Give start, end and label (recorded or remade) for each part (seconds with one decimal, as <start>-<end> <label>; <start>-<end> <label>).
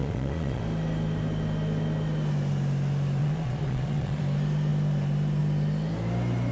0.0-0.6 remade; 0.6-3.2 recorded; 3.2-4.2 remade; 4.2-6.5 recorded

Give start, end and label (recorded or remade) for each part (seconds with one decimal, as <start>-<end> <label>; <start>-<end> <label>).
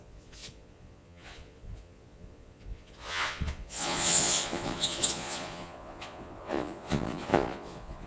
0.0-8.1 remade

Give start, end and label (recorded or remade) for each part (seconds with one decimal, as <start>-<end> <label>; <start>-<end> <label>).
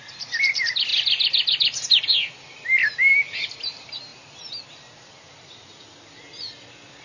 0.0-7.0 recorded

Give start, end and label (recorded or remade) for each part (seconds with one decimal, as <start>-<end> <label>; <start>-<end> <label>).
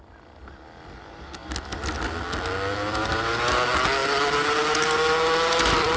0.0-6.0 recorded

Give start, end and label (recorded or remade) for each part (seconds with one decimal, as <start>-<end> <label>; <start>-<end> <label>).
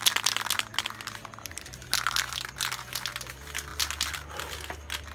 0.0-5.1 recorded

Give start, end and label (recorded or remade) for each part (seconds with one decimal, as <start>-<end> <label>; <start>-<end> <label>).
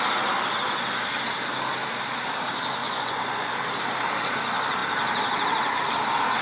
0.0-2.8 recorded; 2.8-3.5 remade; 3.5-6.4 recorded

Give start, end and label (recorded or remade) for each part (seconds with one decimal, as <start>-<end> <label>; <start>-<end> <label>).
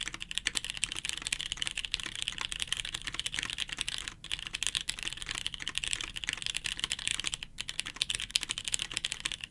0.0-9.5 recorded